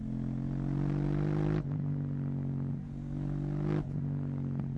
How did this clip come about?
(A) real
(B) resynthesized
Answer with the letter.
A